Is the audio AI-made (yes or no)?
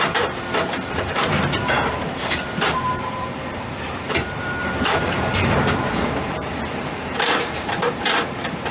yes